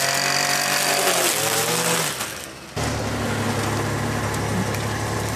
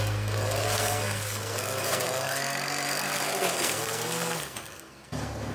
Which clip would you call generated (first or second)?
second